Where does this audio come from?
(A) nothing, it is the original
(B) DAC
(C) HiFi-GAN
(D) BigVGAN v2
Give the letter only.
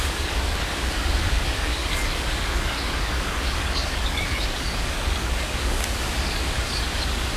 B